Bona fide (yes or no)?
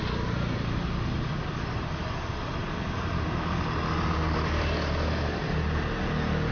yes